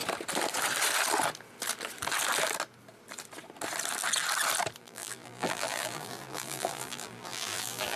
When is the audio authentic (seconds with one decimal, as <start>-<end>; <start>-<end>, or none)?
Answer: 0.0-4.8